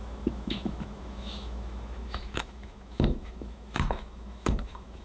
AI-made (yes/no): yes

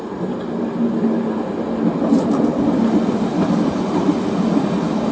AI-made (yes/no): no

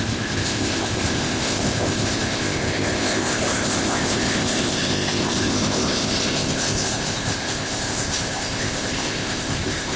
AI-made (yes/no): yes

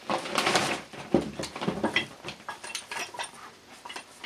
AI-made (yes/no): yes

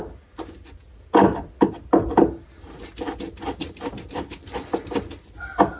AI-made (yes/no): no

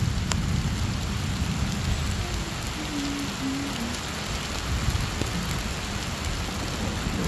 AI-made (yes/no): no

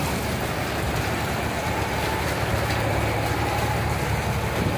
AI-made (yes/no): no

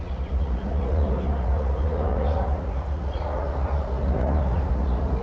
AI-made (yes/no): yes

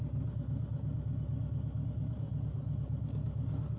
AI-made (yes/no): no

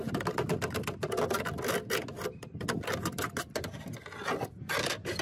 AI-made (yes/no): no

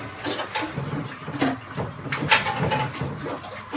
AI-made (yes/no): no